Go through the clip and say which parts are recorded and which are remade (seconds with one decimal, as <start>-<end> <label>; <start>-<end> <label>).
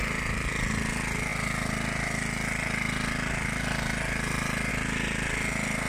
0.0-5.9 recorded